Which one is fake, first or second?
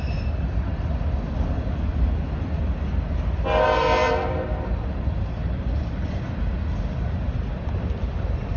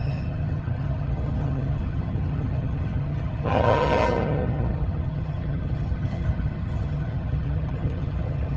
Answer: second